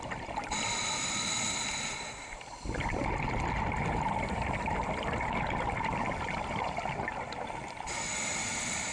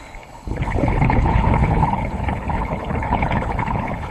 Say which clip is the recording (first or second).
first